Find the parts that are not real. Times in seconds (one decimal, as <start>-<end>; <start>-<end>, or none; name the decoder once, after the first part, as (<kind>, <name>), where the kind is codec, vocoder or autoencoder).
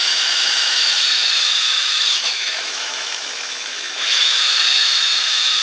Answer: 0.0-5.6 (autoencoder, DAC-VAE)